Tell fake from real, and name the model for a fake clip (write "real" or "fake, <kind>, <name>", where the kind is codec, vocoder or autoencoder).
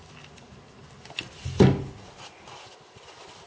real